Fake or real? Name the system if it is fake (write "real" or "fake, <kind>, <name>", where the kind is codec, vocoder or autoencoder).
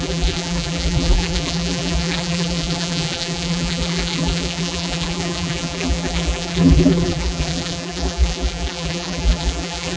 fake, vocoder, BigVGAN v2